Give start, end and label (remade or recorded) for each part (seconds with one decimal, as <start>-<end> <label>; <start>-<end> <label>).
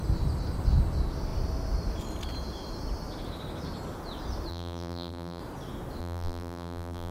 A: 0.0-4.5 recorded; 4.5-5.4 remade; 5.4-6.0 recorded; 6.0-7.1 remade